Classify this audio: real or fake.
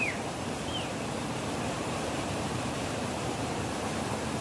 fake